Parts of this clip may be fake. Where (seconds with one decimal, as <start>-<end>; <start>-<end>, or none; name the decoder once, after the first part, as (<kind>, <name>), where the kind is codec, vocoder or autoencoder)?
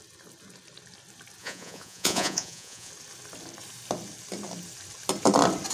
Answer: 1.4-2.9 (vocoder, Vocos)